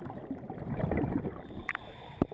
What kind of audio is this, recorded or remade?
recorded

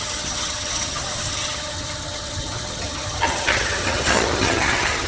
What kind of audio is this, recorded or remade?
remade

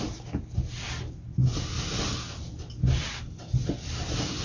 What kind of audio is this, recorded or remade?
recorded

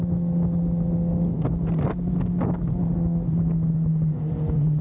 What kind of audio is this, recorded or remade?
recorded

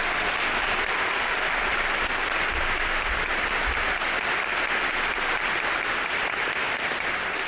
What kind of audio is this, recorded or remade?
remade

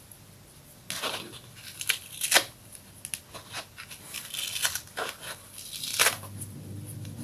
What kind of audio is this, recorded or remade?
recorded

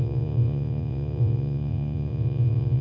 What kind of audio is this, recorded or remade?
remade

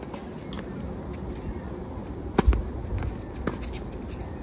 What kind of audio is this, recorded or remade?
recorded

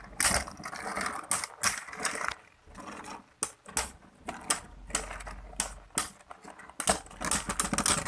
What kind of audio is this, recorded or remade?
recorded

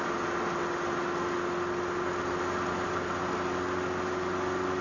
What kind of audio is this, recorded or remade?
recorded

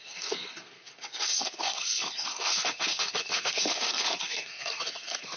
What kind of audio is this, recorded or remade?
remade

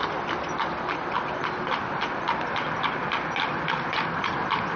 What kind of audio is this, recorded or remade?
recorded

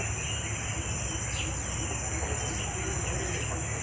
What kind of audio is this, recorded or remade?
recorded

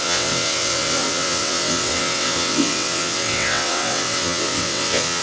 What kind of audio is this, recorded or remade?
remade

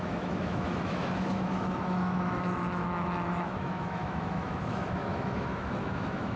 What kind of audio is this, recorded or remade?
remade